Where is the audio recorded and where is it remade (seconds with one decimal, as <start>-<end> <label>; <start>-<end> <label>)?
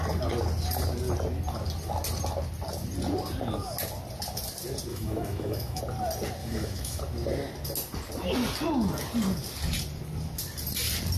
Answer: 0.0-4.9 recorded; 4.9-5.8 remade; 5.8-6.4 recorded; 6.4-7.0 remade; 7.0-11.2 recorded